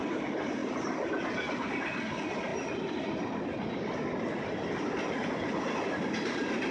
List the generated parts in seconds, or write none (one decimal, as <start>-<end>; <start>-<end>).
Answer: none